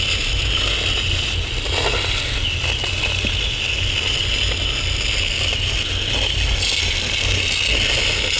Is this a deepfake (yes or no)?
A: no